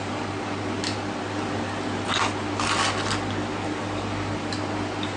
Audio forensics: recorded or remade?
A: recorded